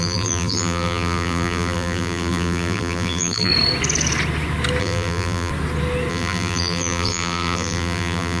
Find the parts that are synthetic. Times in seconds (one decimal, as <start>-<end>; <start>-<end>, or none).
0.0-3.5; 4.8-5.5; 6.1-8.4